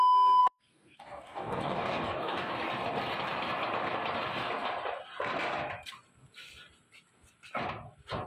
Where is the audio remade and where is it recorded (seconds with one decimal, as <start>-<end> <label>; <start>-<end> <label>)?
0.0-0.4 recorded; 0.4-2.5 remade; 2.5-8.3 recorded